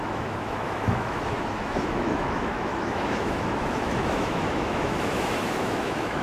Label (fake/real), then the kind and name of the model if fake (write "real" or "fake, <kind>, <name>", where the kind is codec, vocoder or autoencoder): fake, autoencoder, DAC-VAE